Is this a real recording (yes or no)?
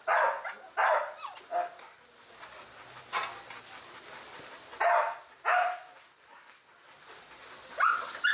yes